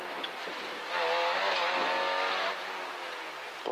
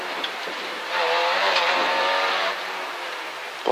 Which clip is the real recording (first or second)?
first